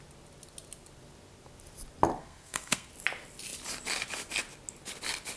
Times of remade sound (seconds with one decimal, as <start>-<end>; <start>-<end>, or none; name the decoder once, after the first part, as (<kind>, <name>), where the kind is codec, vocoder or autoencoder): 2.2-2.9 (codec, SNAC)